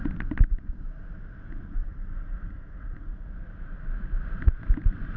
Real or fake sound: real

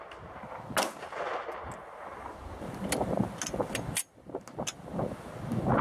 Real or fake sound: real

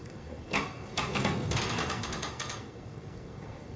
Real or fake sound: fake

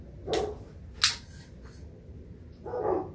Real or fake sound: real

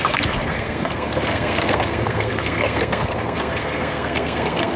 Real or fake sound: fake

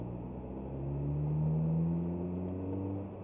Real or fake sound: real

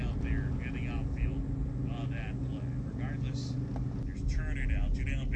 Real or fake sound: real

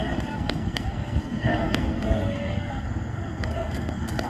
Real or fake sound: fake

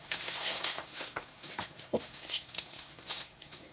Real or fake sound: fake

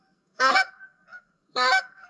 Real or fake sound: fake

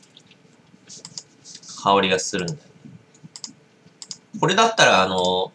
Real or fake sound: real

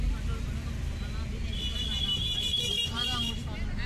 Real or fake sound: real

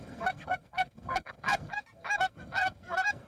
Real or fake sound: fake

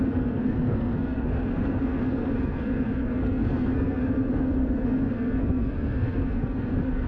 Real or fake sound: fake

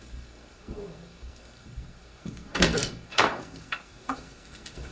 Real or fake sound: fake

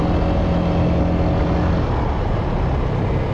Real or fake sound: real